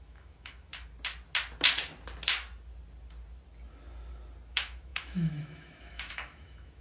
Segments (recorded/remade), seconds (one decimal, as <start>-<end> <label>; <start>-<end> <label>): 0.0-0.7 remade; 0.7-4.5 recorded; 4.5-6.8 remade

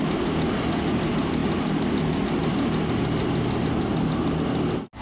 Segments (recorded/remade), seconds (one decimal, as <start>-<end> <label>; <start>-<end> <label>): 0.0-5.0 recorded